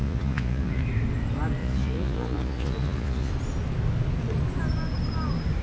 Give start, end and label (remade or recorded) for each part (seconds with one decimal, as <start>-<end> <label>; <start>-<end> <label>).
0.0-0.8 remade; 0.8-1.6 recorded; 1.6-3.3 remade; 3.3-5.6 recorded